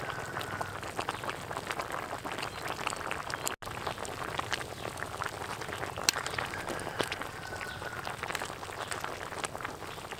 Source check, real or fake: real